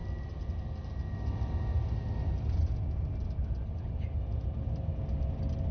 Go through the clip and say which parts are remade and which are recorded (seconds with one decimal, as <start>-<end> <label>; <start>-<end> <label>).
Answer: 0.0-5.7 recorded